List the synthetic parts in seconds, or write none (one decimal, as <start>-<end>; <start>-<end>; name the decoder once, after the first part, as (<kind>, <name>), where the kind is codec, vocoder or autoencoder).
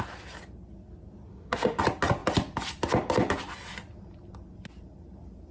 1.3-1.8 (autoencoder, DAC-VAE)